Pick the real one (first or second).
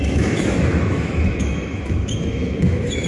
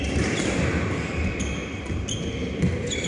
second